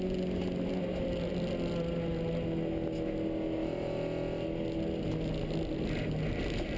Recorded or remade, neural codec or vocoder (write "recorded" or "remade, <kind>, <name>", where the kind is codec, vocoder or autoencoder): recorded